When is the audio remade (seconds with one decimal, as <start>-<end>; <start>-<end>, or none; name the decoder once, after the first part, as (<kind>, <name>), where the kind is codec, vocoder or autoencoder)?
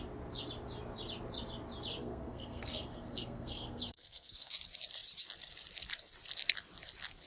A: 2.0-4.5 (codec, SNAC)